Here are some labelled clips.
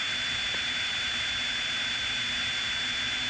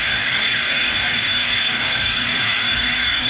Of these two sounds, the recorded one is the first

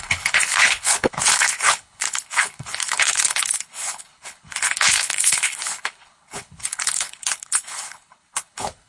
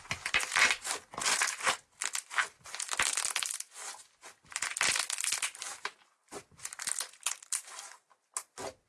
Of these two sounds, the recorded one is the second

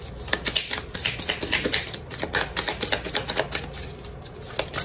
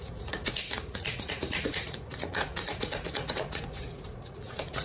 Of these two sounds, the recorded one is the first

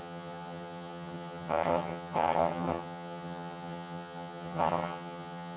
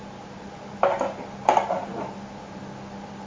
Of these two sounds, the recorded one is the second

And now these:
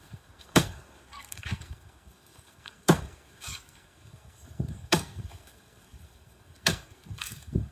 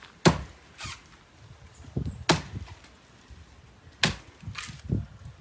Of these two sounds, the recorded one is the second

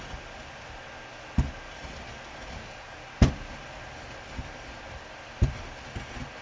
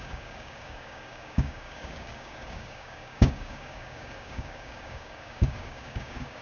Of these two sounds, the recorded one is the first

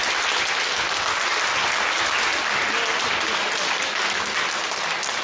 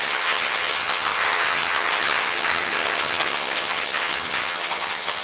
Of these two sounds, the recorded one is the first